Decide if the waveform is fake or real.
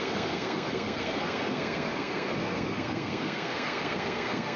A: fake